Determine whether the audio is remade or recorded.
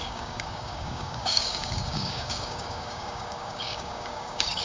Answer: remade